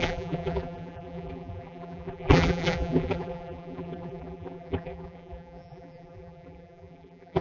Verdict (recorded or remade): remade